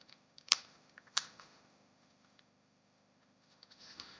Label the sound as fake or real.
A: fake